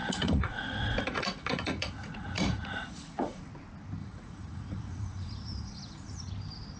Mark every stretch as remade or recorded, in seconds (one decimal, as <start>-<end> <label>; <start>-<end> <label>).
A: 0.0-3.5 remade; 3.5-4.0 recorded; 4.0-6.3 remade; 6.3-6.8 recorded